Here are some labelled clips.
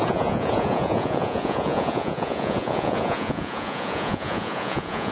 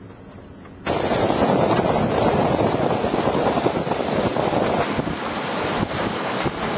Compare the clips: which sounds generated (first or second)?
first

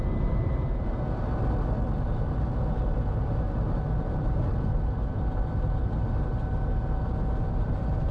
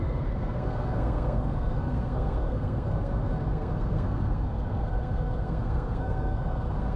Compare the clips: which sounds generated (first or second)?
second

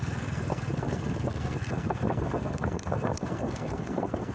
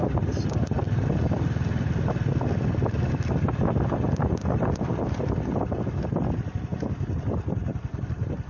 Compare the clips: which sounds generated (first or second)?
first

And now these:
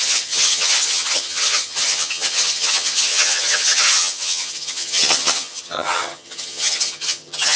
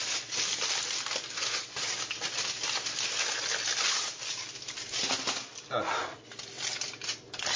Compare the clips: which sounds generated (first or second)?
first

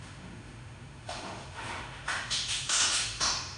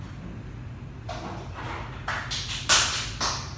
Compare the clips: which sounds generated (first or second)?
first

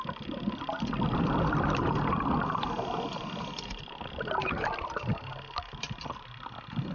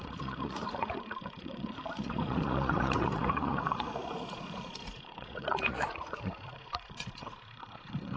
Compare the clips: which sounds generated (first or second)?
second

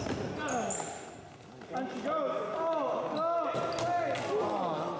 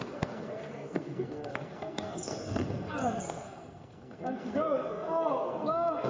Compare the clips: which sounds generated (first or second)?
second